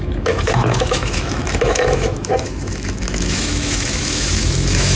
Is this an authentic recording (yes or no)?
no